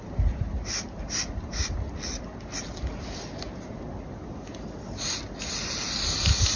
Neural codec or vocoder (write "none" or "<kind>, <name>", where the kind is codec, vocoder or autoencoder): none